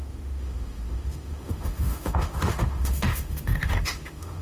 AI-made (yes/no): yes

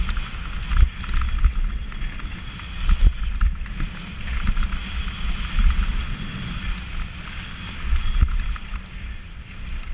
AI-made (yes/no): no